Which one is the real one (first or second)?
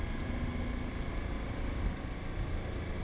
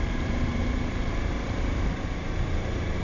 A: first